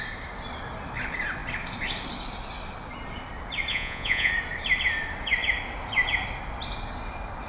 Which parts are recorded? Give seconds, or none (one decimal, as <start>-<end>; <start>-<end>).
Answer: 0.0-3.7; 4.3-7.5